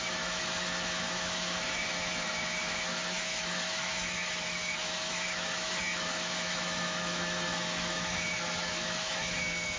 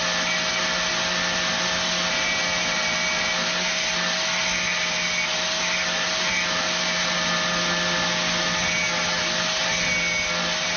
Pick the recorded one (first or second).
second